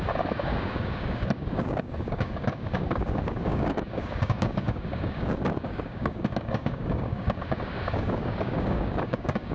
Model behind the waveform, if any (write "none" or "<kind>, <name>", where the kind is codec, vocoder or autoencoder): codec, DAC